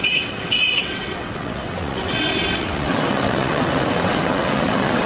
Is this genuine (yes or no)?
no